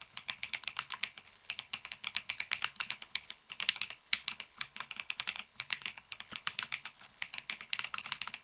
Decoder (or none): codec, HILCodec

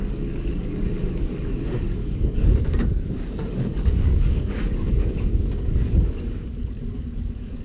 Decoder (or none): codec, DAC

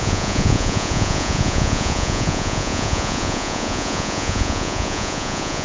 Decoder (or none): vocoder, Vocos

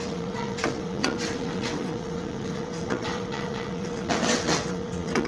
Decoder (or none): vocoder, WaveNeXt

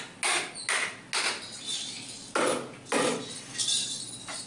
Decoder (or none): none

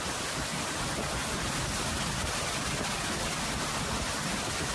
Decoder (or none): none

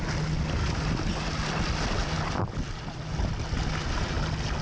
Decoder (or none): none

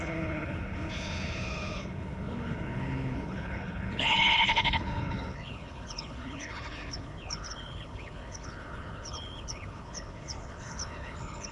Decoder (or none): codec, HILCodec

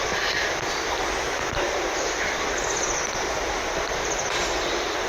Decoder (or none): none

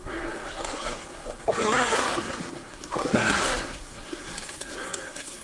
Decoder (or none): codec, SNAC